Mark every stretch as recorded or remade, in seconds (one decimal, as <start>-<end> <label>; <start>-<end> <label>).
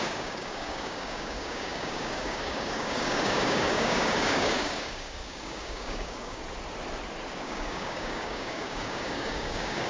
0.0-6.4 remade; 6.4-7.3 recorded; 7.3-9.9 remade